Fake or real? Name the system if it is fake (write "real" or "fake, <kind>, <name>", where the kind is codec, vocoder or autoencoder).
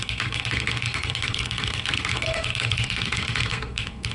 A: fake, codec, SNAC